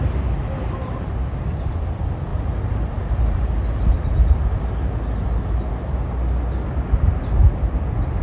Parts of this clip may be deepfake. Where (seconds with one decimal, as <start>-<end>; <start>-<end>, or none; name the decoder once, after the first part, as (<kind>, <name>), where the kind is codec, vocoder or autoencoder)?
2.3-3.6 (vocoder, BigVGAN v2)